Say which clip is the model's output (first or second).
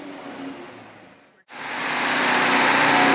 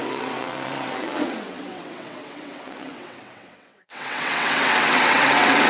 second